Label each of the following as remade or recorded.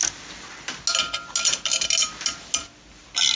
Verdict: recorded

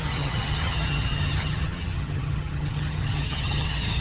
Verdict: remade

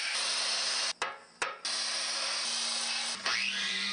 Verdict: recorded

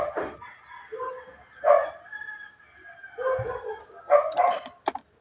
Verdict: recorded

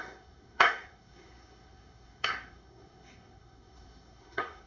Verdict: remade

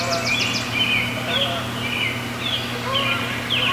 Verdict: recorded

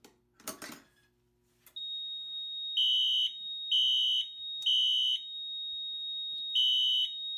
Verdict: recorded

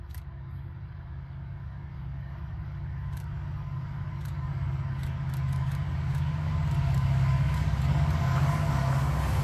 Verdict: remade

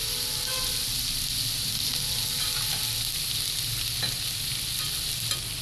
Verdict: recorded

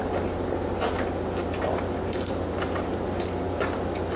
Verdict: recorded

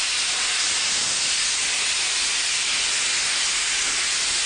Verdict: recorded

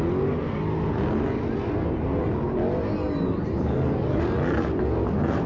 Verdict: recorded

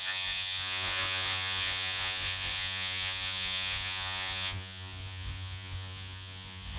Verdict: remade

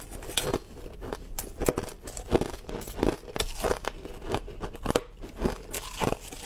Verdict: recorded